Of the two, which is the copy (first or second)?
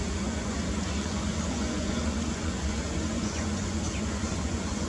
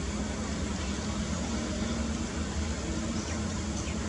first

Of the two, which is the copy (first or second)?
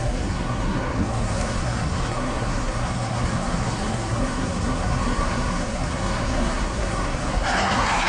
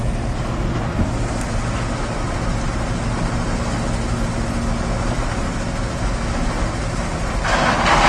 first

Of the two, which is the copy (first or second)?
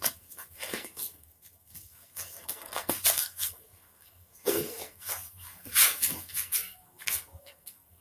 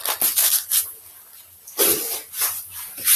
first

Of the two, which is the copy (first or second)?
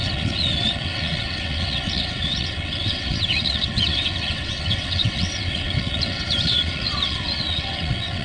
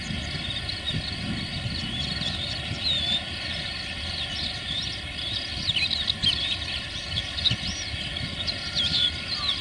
first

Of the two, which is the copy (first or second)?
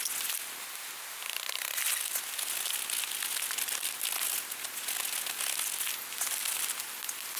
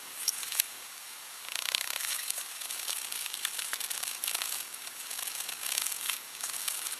second